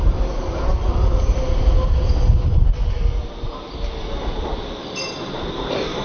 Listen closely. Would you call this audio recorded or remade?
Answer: recorded